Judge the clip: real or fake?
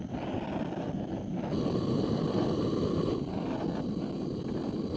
real